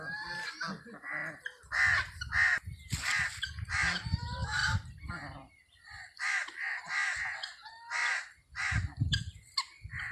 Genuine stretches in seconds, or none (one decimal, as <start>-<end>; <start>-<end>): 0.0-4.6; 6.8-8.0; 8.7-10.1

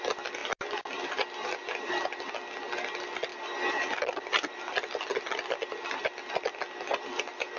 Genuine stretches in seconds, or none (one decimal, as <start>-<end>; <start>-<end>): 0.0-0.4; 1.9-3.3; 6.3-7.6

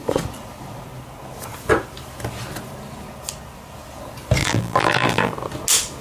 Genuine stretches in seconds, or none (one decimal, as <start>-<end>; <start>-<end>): 0.0-4.4; 5.3-6.0